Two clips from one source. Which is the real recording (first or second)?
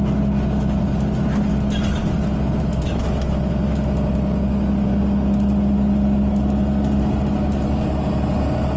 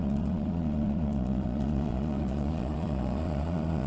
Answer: first